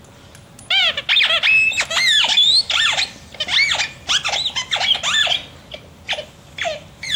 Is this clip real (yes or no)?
yes